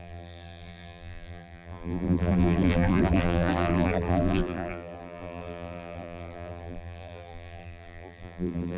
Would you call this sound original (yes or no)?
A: no